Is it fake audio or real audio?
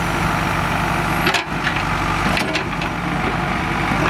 real